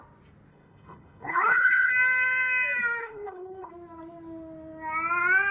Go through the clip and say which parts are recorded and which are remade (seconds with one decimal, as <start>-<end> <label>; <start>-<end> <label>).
0.0-0.5 recorded; 0.5-1.9 remade; 1.9-3.0 recorded; 3.0-3.7 remade; 3.7-5.5 recorded